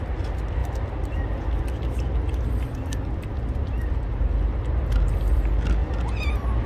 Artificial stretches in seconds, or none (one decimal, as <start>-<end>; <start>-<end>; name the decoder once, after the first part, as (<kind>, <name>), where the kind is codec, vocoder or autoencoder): none